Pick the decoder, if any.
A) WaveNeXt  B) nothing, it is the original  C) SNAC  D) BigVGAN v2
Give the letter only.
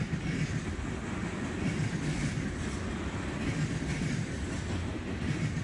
B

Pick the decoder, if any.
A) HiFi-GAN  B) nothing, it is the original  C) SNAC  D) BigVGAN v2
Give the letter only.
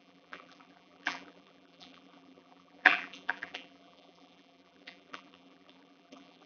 D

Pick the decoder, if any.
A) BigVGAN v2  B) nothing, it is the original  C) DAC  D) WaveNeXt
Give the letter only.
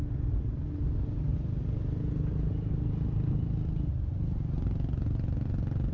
B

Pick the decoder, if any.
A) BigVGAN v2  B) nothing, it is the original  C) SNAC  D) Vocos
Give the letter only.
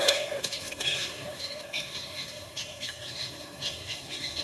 C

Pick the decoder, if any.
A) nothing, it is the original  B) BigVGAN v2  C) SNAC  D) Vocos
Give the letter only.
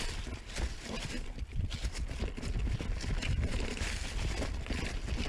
A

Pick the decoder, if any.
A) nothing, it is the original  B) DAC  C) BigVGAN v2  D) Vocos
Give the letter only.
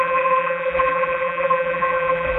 C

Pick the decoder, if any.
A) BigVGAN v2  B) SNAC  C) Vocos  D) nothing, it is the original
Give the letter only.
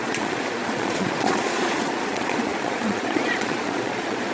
C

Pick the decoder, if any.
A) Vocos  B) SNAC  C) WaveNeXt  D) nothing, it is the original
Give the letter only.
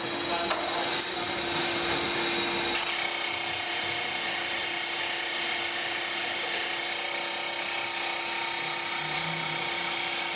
D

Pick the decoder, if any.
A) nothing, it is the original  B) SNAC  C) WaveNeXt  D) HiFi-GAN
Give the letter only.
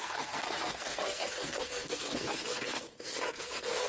B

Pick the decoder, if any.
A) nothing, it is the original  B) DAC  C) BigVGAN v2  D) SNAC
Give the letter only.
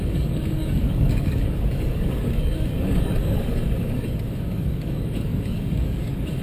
B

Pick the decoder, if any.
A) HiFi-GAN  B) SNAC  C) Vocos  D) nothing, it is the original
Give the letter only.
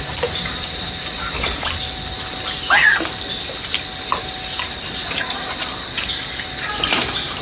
D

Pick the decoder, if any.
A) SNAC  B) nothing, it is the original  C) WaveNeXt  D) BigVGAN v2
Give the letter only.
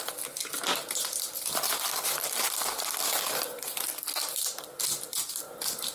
B